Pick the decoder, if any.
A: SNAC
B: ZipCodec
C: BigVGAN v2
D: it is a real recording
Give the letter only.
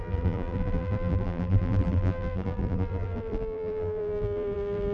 C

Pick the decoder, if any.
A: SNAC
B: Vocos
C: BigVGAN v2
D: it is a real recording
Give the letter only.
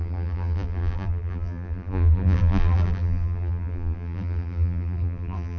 C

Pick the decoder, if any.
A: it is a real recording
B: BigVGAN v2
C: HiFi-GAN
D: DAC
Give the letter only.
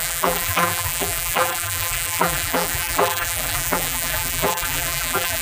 B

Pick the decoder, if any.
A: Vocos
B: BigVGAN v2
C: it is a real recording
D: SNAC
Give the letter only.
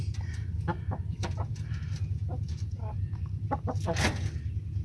B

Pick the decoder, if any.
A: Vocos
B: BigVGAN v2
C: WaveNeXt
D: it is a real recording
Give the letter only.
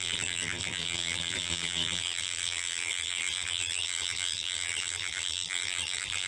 B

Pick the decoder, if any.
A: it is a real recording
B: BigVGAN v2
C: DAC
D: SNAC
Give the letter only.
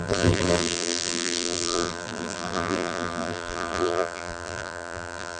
B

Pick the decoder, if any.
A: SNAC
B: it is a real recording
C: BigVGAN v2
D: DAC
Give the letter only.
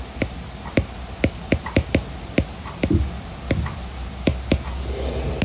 B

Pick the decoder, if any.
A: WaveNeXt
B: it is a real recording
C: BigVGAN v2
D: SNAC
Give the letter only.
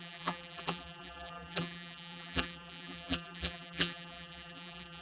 C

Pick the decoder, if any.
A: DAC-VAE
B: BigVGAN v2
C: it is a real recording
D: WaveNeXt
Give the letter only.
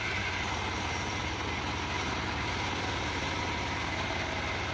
B